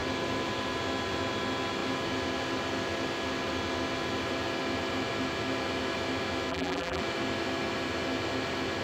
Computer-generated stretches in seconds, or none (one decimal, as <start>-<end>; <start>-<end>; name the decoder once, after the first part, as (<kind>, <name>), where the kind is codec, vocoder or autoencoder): 6.5-7.0 (vocoder, BigVGAN v2)